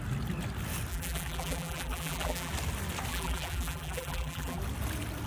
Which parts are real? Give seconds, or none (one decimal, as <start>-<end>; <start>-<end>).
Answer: 0.0-0.9; 2.5-3.1; 4.6-5.3